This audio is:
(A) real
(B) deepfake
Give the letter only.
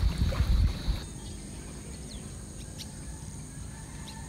B